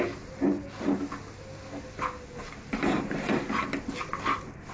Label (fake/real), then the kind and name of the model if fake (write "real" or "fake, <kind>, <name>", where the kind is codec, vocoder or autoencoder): real